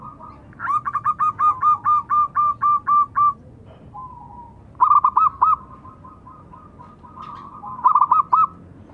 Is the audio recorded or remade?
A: recorded